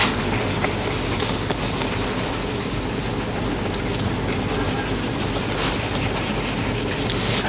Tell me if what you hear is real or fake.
real